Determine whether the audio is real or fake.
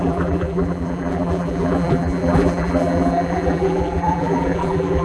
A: fake